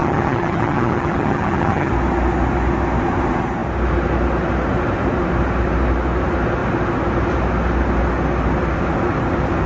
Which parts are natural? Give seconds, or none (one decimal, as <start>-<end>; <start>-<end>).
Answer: 1.9-9.7